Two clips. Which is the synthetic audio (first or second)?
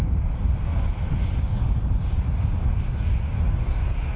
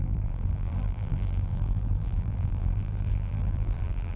second